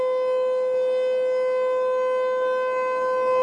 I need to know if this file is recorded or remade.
recorded